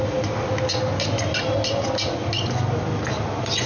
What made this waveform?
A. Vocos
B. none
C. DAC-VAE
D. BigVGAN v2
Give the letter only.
B